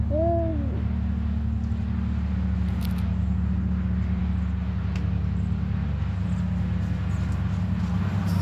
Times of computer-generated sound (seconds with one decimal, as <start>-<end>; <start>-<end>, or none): none